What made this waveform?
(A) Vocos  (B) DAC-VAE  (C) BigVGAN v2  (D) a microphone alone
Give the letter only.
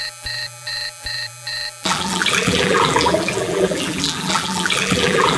C